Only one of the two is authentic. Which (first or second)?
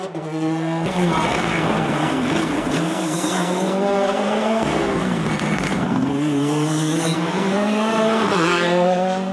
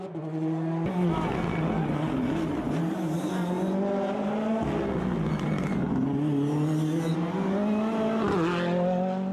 second